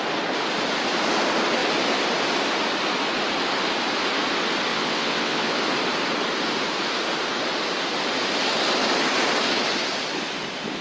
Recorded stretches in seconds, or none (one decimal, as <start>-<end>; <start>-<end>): 0.0-4.7; 5.6-10.8